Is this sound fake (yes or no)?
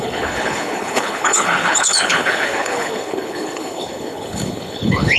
yes